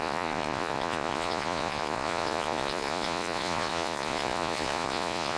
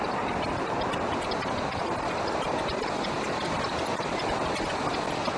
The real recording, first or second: second